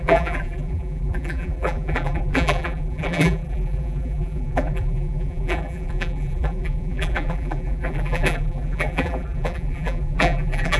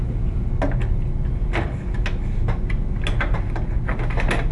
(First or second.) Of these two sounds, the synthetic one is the first